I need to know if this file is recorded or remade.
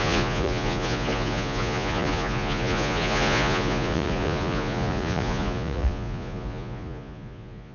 remade